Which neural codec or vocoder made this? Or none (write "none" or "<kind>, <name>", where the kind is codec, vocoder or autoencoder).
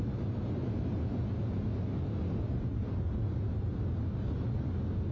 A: none